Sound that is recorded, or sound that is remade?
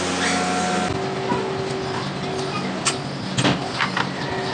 recorded